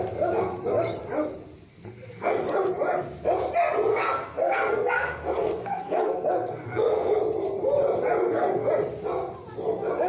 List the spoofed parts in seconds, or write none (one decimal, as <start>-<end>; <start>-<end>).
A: 1.7-2.4; 3.9-7.2; 8.2-8.7